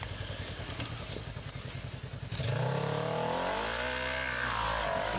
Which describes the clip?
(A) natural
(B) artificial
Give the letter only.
A